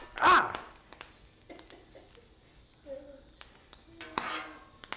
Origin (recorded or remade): recorded